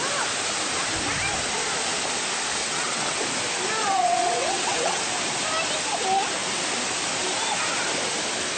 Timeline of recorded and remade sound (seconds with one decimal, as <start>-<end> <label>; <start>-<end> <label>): 0.0-2.6 recorded; 2.6-3.2 remade; 3.2-3.8 recorded; 3.8-5.0 remade; 5.0-8.6 recorded